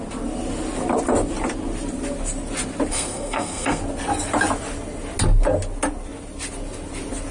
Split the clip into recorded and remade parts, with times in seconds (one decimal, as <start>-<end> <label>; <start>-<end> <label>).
0.0-2.9 recorded; 2.9-3.8 remade; 3.8-7.3 recorded